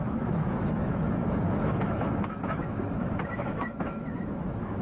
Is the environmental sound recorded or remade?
remade